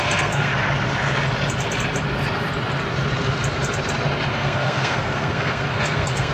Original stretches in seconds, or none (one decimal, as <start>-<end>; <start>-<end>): 0.5-4.3